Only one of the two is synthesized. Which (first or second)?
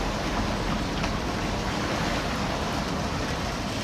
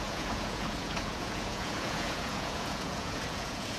second